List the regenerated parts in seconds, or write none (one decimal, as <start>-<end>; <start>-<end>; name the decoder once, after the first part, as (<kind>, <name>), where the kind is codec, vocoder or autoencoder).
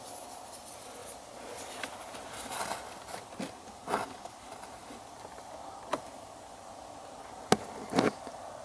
none